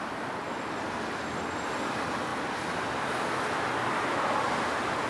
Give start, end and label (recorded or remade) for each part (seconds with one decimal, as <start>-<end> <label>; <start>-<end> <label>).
0.0-5.1 recorded